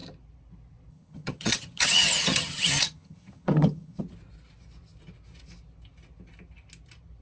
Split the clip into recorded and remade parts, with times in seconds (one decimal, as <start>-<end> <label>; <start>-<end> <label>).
0.0-0.9 recorded; 0.9-4.0 remade; 4.0-7.2 recorded